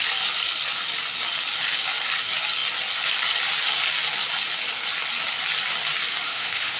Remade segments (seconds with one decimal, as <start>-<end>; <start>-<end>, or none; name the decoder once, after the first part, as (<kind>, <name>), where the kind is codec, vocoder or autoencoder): 6.1-6.8 (autoencoder, DAC-VAE)